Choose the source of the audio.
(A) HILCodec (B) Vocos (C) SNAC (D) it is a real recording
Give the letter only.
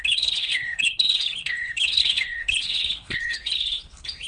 A